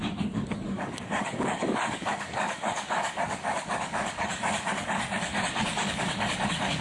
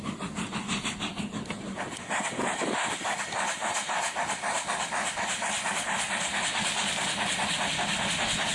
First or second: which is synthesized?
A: first